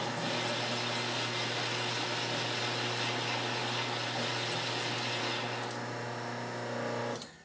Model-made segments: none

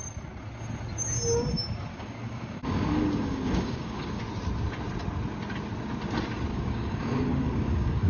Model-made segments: 1.9-4.2 (codec, DAC); 6.5-8.1

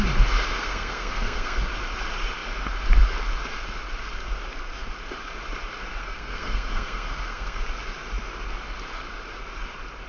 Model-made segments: 0.5-1.6 (codec, SNAC); 6.0-7.6

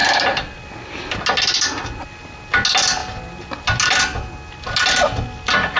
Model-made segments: none

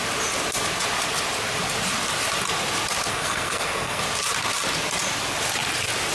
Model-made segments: 3.1-4.0 (codec, SNAC)

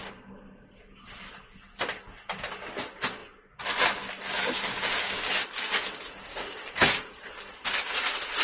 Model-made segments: 4.7-5.3 (codec, DAC); 6.3-7.4